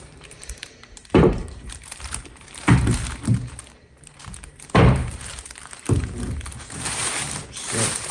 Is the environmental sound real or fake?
fake